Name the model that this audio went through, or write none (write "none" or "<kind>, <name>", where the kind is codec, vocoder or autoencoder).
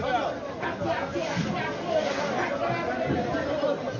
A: none